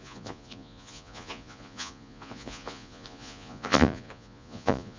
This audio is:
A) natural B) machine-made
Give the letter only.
B